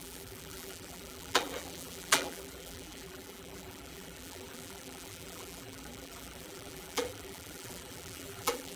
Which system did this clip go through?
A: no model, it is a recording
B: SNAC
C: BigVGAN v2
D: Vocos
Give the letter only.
C